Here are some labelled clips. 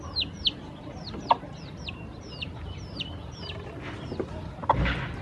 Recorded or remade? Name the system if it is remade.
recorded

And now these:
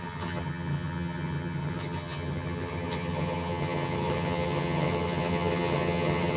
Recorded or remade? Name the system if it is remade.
remade, vocoder, HiFi-GAN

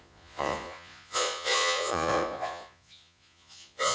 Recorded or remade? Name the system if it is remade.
remade, vocoder, Vocos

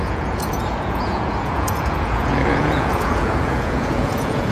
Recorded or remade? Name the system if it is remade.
remade, vocoder, Vocos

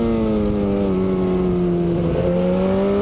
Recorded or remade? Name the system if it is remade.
recorded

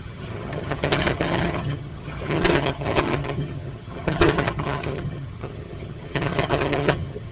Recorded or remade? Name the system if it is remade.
remade, vocoder, HiFi-GAN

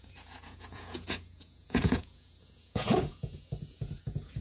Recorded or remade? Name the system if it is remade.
remade, vocoder, Vocos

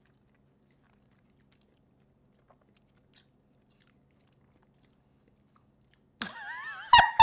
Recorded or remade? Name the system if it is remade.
recorded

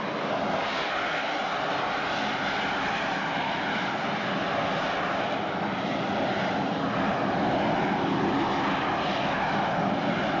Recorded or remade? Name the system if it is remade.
recorded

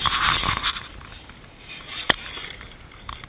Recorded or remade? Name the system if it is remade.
recorded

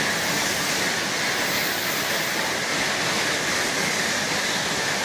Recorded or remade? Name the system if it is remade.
recorded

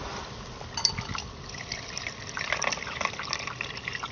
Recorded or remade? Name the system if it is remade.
recorded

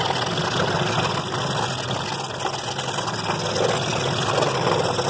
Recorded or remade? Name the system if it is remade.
recorded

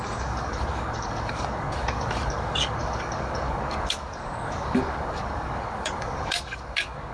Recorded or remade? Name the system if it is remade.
remade, codec, DAC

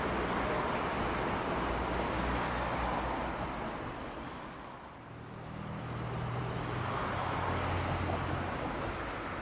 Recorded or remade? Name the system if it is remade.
recorded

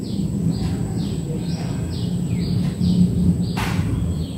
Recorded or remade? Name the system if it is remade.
recorded